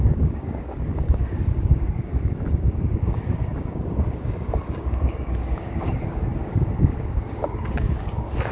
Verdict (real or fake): fake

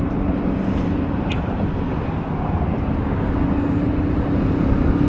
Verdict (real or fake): real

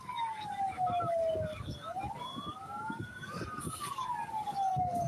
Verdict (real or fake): fake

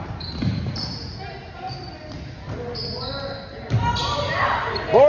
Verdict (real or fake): real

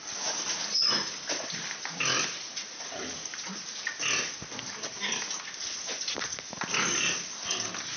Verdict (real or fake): real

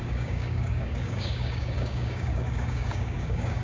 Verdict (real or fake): fake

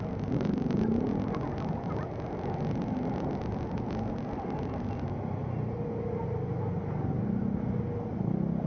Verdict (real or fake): real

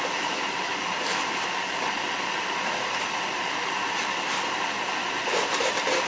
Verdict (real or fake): real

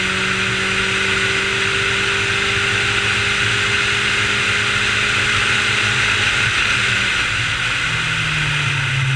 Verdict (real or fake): real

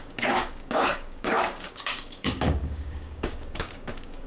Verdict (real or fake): fake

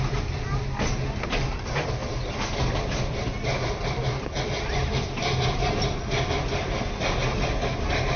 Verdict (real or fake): real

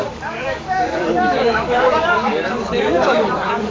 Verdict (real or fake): fake